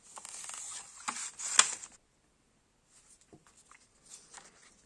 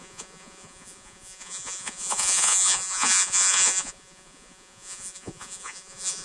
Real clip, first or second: first